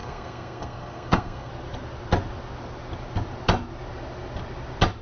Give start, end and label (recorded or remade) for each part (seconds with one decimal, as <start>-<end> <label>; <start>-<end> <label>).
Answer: 0.0-1.5 remade; 1.5-5.0 recorded